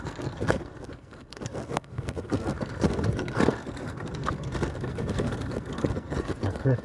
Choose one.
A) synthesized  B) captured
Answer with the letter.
A